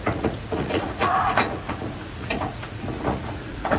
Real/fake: fake